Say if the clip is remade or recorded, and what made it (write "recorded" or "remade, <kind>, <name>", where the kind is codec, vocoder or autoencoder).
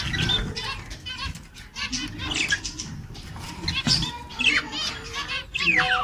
recorded